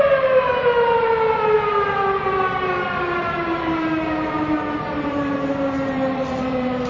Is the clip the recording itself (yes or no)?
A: no